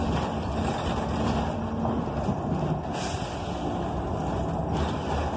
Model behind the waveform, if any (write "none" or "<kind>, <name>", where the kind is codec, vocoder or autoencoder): none